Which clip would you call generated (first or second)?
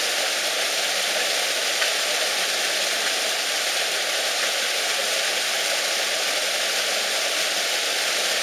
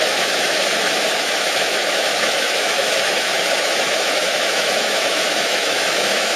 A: second